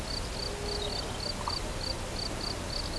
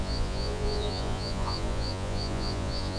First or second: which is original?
first